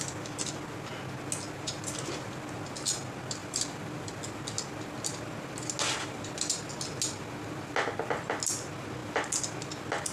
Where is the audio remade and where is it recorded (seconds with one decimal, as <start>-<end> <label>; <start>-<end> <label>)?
0.0-3.4 recorded; 3.4-4.1 remade; 4.1-10.1 recorded